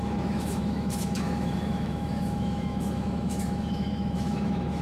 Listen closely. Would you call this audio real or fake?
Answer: fake